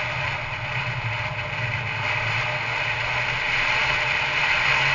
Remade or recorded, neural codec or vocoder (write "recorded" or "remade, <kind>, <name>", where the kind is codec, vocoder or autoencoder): recorded